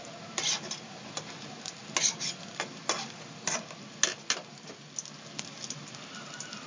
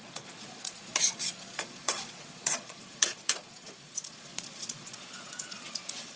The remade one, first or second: second